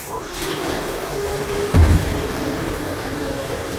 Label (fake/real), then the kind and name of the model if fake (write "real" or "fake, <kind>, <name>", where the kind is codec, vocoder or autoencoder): fake, codec, DAC